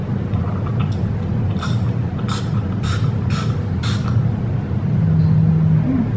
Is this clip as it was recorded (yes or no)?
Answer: yes